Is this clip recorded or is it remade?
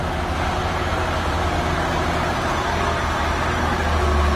recorded